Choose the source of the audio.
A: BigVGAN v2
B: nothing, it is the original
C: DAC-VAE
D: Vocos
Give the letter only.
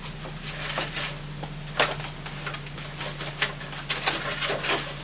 B